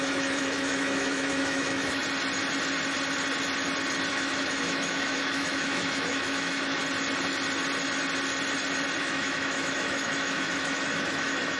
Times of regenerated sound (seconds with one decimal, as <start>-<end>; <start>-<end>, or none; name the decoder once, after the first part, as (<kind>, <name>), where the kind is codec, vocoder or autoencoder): 0.0-2.0 (autoencoder, DAC-VAE); 4.1-6.8; 9.0-11.6